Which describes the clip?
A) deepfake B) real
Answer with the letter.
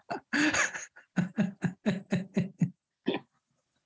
B